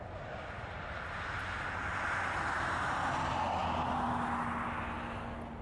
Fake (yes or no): no